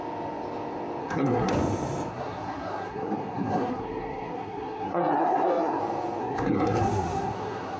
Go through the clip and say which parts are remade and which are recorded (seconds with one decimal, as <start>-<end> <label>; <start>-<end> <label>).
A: 0.0-1.0 recorded; 1.0-1.5 remade; 1.5-2.1 recorded; 2.1-5.8 remade; 5.8-6.2 recorded; 6.2-7.8 remade